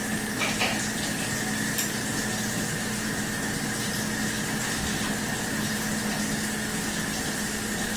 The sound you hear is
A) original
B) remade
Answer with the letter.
A